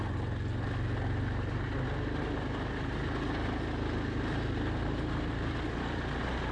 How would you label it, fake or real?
real